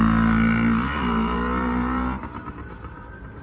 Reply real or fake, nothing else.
real